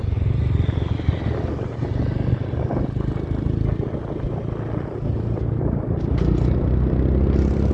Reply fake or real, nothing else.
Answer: real